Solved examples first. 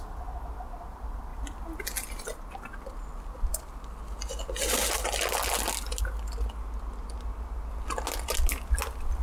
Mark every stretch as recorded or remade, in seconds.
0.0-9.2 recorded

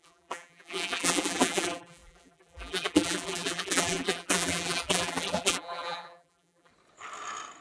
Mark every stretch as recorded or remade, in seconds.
0.0-6.7 remade; 6.7-7.6 recorded

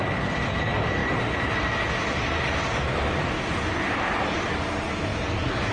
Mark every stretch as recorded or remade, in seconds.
0.0-1.0 recorded; 1.0-1.5 remade; 1.5-5.1 recorded; 5.1-5.7 remade